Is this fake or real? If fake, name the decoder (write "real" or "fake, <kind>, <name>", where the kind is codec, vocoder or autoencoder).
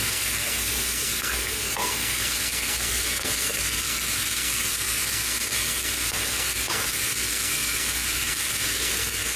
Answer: fake, codec, SNAC